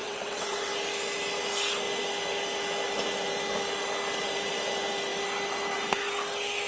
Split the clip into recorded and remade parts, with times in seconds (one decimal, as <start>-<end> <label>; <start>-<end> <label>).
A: 0.0-0.7 remade; 0.7-6.7 recorded